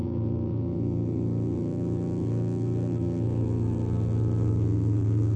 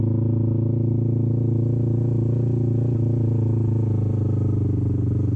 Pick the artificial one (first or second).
first